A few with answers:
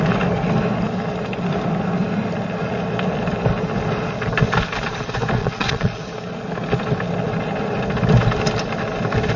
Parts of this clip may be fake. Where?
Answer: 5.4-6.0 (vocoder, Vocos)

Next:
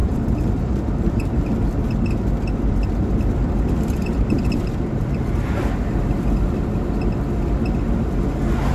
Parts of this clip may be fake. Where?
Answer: 0.0-1.5 (vocoder, BigVGAN v2); 4.0-5.6

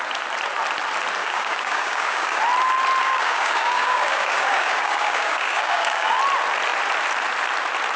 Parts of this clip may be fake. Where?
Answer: 1.2-2.4 (codec, DAC); 3.0-6.1

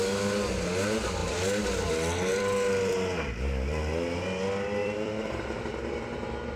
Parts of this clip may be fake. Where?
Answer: 2.3-2.9 (vocoder, BigVGAN v2); 4.8-5.7

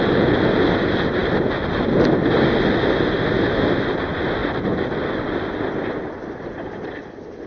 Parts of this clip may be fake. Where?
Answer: none

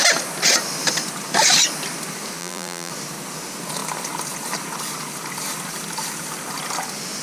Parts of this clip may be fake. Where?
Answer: 2.4-2.9 (vocoder, BigVGAN v2)

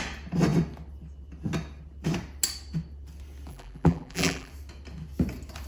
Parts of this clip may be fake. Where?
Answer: 3.5-4.5 (vocoder, BigVGAN v2)